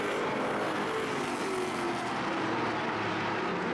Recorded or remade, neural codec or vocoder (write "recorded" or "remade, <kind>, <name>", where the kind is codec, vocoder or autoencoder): recorded